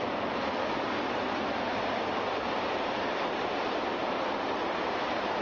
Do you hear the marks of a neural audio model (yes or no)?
no